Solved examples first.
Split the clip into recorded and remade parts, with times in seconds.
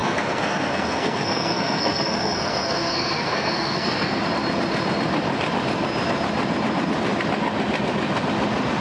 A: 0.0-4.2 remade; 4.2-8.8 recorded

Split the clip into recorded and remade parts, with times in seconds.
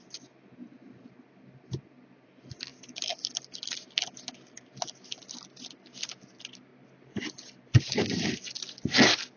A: 0.0-9.4 recorded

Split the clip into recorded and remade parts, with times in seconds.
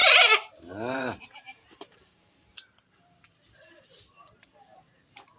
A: 0.0-3.2 remade; 3.2-5.4 recorded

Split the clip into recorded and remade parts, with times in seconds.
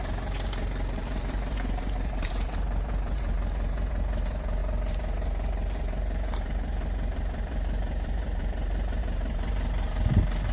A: 0.0-10.5 remade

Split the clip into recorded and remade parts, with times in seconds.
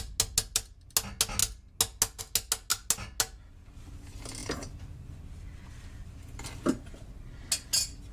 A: 0.0-8.1 recorded